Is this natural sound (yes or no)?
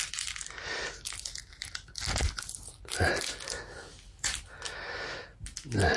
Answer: yes